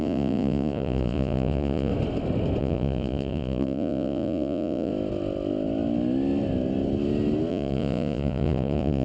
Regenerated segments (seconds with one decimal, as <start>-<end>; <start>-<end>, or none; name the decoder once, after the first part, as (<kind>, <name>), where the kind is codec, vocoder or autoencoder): 0.0-1.9 (vocoder, Vocos); 2.6-4.9; 7.5-9.0